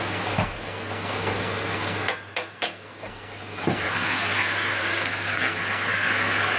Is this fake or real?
fake